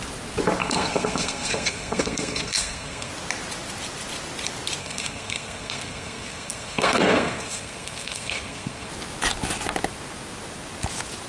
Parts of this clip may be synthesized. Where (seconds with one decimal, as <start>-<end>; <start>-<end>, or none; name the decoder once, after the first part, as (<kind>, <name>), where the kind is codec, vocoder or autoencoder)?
0.6-3.1 (codec, SNAC); 4.8-8.9